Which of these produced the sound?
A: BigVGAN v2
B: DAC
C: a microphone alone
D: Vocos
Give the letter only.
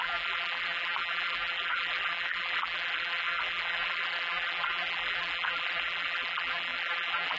A